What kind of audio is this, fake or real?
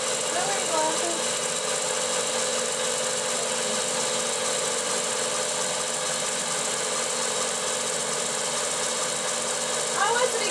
real